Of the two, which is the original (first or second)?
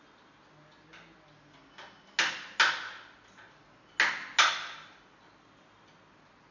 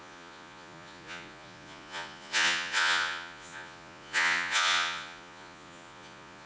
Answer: first